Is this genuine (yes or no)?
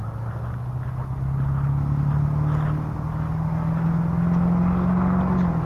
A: yes